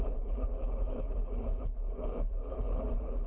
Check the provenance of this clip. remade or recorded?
remade